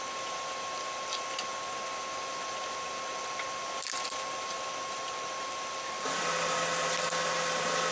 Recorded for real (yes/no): yes